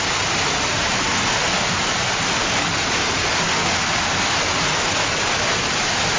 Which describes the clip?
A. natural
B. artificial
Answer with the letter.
A